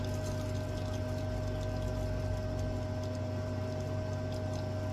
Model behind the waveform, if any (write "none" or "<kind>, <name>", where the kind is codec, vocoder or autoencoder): none